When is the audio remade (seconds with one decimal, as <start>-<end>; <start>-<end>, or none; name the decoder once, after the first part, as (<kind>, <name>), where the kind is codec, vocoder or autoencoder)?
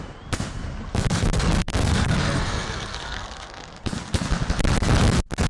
0.9-3.9 (codec, SNAC)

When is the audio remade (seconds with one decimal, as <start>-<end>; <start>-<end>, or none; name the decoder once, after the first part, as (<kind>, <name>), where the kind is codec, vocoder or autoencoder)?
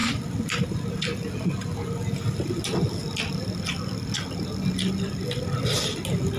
none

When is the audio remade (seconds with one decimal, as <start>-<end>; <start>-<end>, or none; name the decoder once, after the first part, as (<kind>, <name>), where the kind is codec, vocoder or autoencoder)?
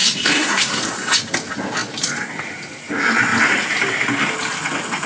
0.0-0.8 (codec, SNAC)